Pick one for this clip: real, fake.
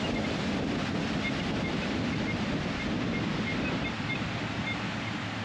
real